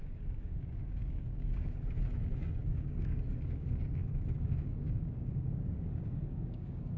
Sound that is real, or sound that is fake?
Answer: fake